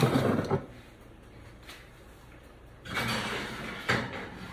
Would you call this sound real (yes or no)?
no